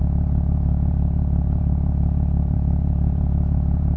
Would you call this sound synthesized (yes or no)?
yes